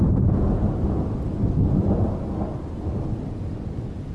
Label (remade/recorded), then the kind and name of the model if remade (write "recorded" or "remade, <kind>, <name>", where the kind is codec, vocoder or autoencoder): recorded